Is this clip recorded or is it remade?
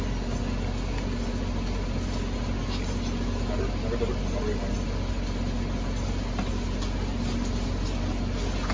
recorded